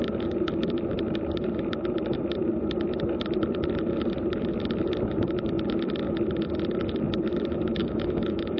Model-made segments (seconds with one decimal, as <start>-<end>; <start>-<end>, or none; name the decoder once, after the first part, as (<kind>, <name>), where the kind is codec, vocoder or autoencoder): 7.8-8.6 (autoencoder, DAC-VAE)